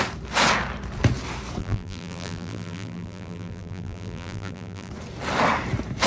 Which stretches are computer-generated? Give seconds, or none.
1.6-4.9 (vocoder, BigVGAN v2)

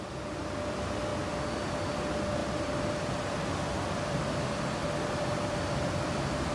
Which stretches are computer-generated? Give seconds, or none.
none

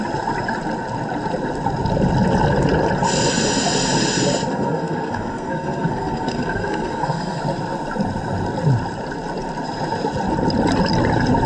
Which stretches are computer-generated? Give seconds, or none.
4.5-7.4 (codec, SNAC)

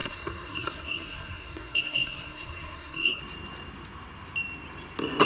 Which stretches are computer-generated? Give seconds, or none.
0.0-3.2 (codec, SNAC)